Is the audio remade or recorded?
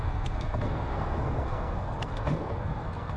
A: remade